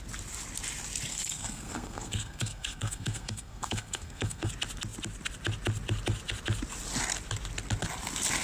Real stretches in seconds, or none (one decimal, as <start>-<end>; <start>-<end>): 0.0-1.1; 4.5-8.4